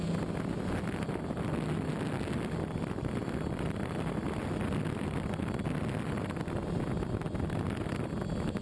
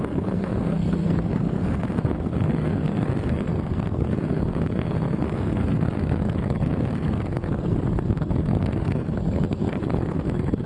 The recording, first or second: first